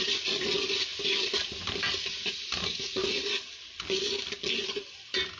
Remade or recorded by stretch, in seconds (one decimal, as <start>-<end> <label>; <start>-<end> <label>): 0.0-5.4 recorded